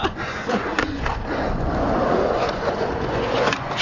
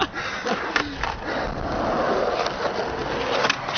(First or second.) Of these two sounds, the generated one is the first